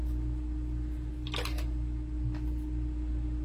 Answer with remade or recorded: recorded